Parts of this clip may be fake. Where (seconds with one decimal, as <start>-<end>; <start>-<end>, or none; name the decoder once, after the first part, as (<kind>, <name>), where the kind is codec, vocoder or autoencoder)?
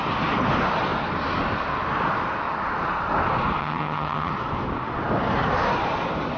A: 3.6-4.3 (vocoder, HiFi-GAN)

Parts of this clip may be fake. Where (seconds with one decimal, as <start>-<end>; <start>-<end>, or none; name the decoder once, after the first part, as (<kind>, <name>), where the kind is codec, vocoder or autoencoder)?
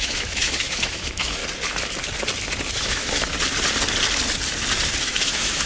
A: 0.0-1.4 (autoencoder, DAC-VAE); 2.7-3.3; 5.0-5.7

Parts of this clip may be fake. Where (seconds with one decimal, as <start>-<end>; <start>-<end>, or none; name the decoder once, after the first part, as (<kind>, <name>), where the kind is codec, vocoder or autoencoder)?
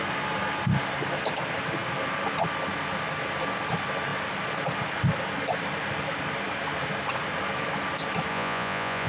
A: 8.3-9.1 (vocoder, Vocos)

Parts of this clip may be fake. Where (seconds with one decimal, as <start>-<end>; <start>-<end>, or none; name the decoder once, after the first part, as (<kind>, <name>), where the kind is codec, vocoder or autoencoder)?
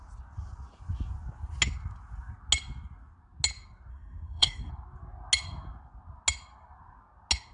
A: 3.9-4.7 (codec, SNAC)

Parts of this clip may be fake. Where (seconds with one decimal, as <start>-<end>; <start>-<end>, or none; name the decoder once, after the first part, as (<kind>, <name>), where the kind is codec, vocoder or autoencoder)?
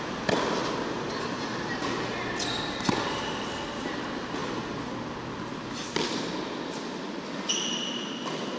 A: none